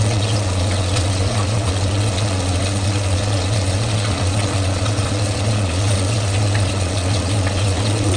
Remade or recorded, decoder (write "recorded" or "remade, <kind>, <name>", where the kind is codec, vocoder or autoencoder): remade, vocoder, Vocos